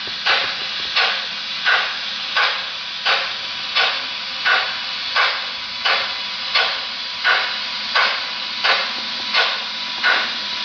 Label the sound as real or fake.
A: real